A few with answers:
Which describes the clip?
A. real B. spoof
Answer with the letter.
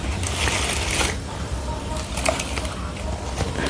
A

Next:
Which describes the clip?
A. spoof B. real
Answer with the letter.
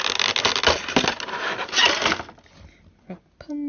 B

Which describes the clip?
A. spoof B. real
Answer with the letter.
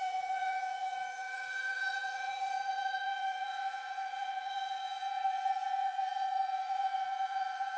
A